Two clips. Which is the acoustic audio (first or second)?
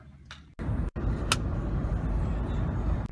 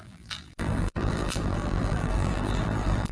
first